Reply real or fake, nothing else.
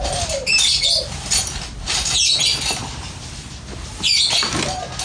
real